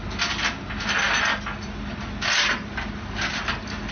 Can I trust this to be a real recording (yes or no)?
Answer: yes